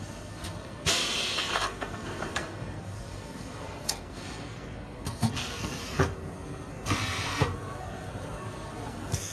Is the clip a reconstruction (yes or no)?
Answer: yes